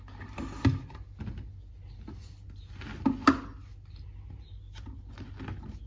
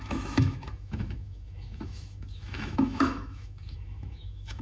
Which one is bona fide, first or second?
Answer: first